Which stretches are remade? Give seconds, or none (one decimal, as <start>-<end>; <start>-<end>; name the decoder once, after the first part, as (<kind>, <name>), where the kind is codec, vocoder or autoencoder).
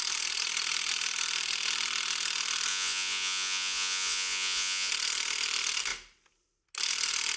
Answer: 2.7-4.9 (vocoder, Vocos)